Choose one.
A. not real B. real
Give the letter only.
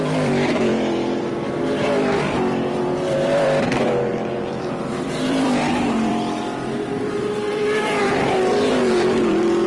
A